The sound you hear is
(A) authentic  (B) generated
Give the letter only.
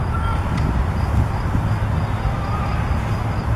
A